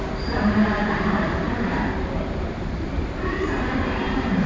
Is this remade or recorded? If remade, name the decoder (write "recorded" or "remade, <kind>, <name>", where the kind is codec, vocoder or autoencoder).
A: remade, vocoder, BigVGAN v2